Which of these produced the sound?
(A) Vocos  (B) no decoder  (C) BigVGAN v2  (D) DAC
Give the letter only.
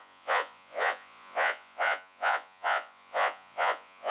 A